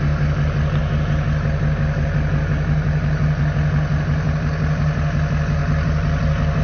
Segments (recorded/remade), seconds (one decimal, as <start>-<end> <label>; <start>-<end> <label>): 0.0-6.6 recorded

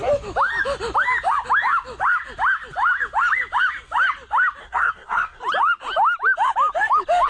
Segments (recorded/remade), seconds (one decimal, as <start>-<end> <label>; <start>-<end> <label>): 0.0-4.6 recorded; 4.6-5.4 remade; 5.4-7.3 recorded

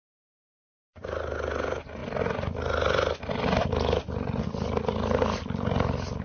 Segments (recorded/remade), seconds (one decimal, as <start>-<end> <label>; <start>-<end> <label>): 0.0-6.2 recorded